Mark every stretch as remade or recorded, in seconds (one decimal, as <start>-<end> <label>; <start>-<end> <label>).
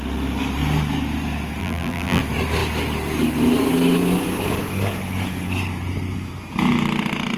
0.0-1.6 recorded; 1.6-2.2 remade; 2.2-7.4 recorded